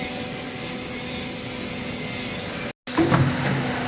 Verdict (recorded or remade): recorded